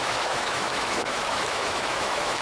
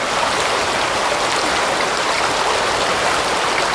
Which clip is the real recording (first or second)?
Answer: second